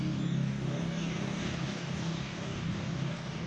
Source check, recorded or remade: remade